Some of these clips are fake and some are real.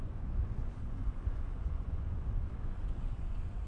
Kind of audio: fake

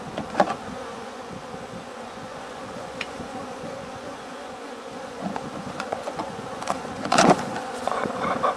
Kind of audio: fake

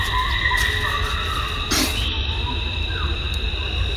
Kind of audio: real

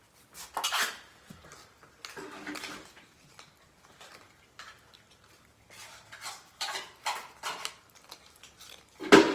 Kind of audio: real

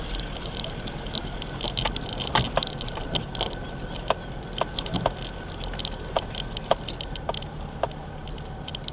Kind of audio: real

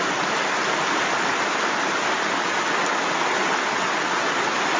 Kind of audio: real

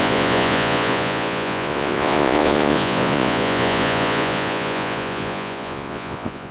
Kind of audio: fake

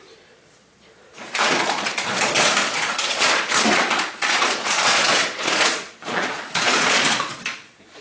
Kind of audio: fake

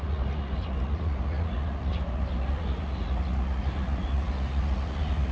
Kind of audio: fake